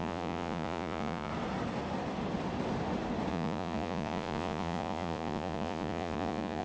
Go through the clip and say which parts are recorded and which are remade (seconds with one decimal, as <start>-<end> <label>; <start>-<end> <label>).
0.0-1.3 remade; 1.3-3.3 recorded; 3.3-6.6 remade